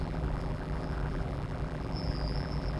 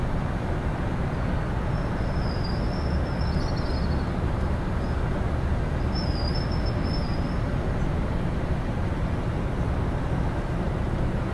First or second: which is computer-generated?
first